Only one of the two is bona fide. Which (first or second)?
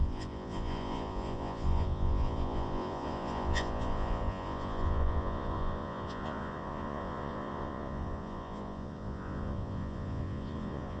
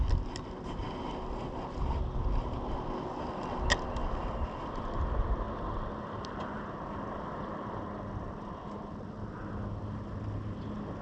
second